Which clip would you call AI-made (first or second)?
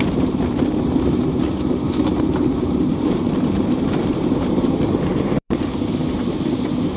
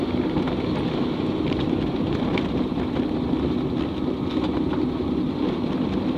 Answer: first